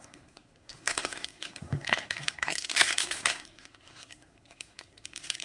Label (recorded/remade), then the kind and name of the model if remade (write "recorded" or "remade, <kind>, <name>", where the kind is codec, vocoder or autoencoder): remade, codec, SNAC